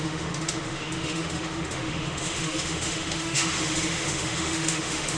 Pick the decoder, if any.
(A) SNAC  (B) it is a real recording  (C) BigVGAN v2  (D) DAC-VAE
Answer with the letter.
D